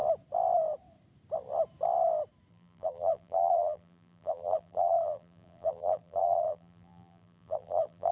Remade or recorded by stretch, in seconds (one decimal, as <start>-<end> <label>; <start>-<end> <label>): 0.0-2.5 recorded; 2.5-8.1 remade